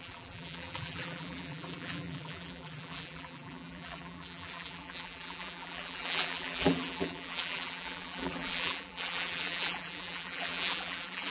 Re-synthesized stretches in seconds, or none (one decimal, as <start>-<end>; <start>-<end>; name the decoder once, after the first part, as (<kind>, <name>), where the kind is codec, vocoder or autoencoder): 0.0-11.3 (vocoder, BigVGAN v2)